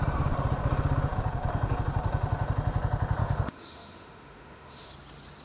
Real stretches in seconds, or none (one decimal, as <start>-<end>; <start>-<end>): 0.0-3.2; 4.9-5.4